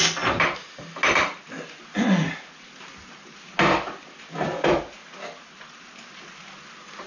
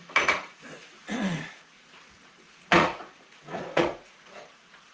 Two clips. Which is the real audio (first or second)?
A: first